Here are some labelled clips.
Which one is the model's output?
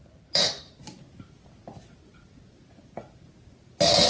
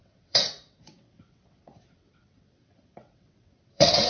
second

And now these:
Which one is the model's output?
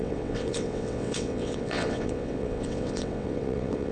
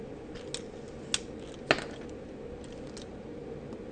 first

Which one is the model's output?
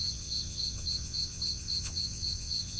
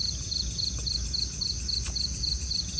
first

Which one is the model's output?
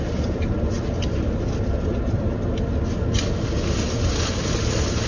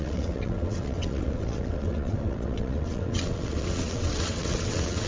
second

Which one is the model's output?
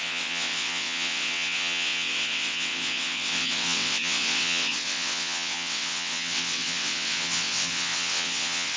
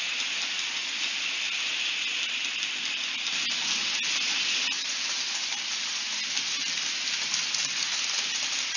first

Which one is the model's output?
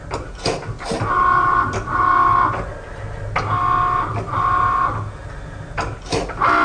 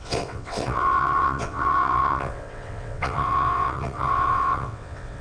second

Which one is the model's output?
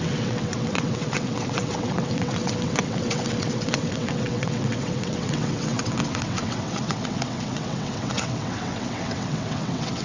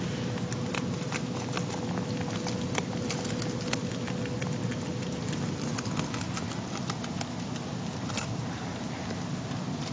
first